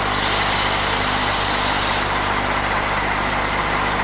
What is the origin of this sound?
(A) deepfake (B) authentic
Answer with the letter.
B